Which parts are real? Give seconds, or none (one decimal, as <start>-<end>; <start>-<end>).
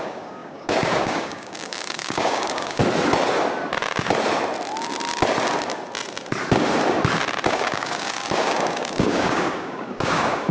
2.8-7.5